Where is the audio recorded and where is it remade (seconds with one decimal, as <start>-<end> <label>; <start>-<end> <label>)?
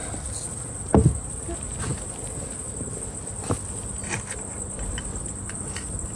0.0-6.2 recorded